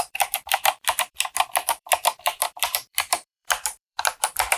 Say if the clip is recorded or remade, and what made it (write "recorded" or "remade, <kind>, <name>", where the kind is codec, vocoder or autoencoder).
remade, vocoder, BigVGAN v2